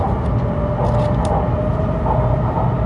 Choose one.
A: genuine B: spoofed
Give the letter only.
A